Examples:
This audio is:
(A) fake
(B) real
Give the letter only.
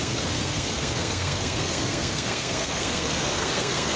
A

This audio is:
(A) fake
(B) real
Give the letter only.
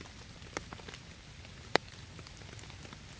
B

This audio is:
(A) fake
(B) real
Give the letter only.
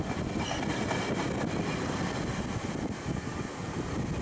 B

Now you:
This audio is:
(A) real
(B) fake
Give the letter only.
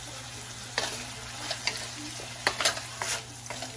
A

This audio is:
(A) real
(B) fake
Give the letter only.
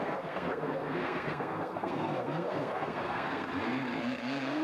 B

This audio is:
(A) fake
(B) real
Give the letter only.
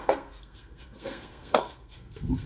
A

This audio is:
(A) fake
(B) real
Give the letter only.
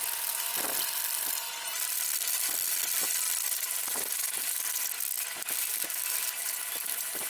B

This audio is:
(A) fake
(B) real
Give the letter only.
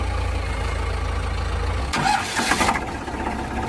B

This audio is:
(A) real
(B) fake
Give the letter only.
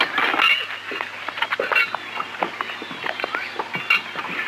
A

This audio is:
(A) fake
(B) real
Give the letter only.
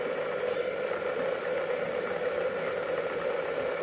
B